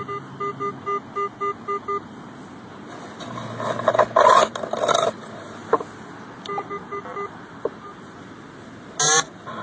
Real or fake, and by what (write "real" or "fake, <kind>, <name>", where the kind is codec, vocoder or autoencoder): real